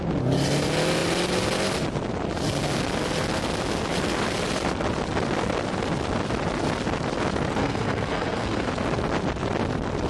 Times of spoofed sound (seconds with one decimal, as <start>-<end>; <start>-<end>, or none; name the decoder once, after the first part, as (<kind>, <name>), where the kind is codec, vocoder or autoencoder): 7.6-8.7 (codec, SNAC)